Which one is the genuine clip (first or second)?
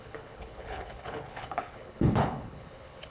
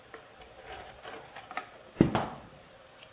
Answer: second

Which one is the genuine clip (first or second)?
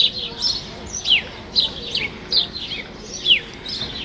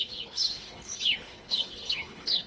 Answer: first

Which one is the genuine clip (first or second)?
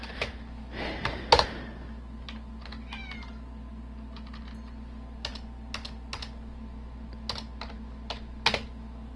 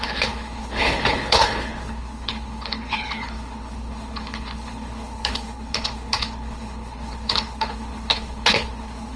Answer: first